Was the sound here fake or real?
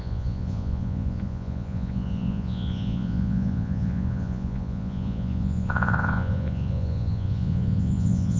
fake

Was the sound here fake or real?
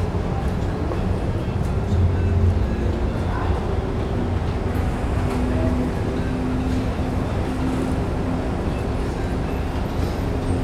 real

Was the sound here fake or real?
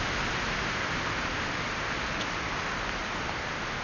real